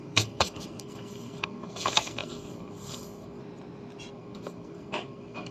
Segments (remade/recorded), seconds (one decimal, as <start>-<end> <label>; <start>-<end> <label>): 0.0-3.4 remade; 3.4-4.1 recorded; 4.1-5.5 remade